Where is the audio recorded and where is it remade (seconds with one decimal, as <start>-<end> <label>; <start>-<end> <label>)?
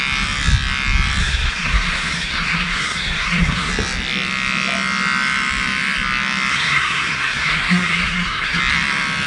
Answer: 0.0-1.2 recorded; 1.2-3.7 remade; 3.7-6.5 recorded; 6.5-8.6 remade; 8.6-9.3 recorded